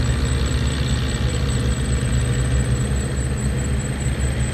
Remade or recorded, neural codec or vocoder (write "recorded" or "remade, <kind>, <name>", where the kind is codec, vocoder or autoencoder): recorded